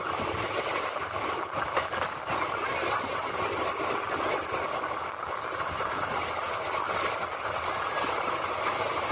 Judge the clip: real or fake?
real